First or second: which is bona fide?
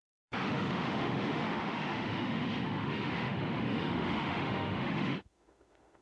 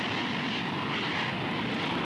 second